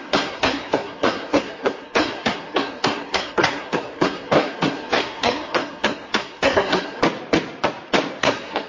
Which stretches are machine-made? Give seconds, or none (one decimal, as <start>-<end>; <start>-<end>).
0.0-7.0; 8.2-8.7